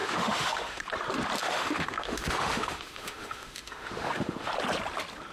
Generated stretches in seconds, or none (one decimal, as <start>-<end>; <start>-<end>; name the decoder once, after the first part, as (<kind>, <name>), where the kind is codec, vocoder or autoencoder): 0.0-0.8 (autoencoder, DAC-VAE); 1.4-4.5